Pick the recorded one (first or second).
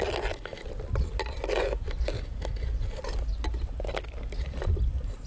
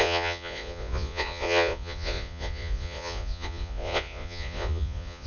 first